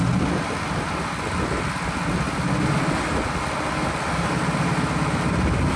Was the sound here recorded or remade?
recorded